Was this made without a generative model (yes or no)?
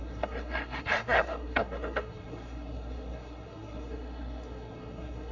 no